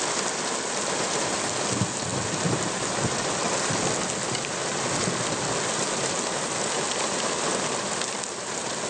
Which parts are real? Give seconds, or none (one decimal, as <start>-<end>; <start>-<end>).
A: 0.0-8.9